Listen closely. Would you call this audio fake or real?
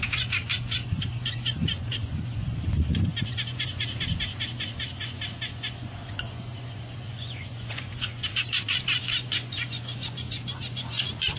fake